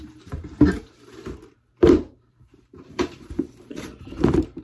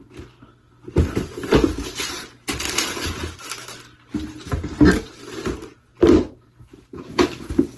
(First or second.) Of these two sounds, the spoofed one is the first